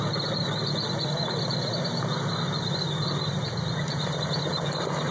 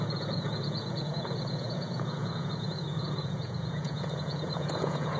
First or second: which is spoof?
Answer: second